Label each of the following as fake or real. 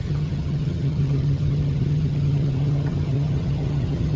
fake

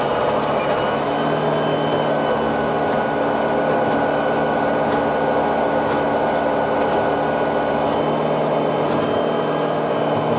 real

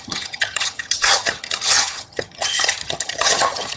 fake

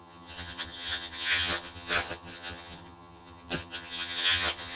fake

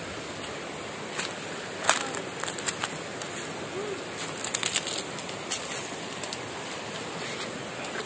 real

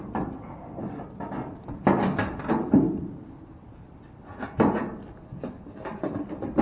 real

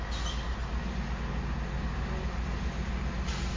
real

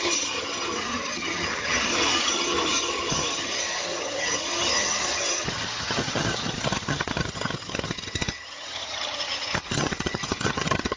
fake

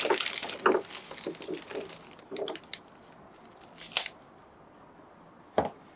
real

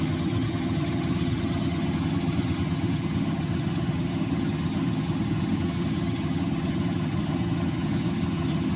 fake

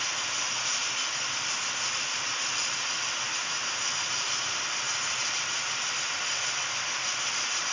real